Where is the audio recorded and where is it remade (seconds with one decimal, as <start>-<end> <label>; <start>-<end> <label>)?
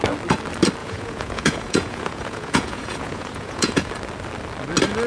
0.0-0.8 recorded; 0.8-3.9 remade; 3.9-5.1 recorded